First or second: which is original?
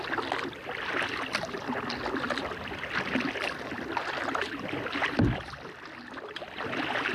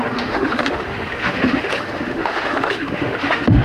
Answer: first